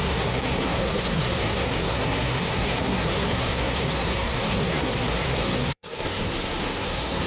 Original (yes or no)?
no